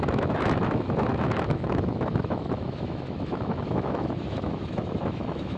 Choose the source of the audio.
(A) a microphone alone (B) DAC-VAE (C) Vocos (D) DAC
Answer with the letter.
B